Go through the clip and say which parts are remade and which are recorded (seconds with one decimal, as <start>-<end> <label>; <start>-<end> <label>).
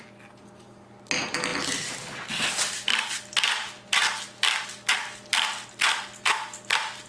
0.0-7.1 recorded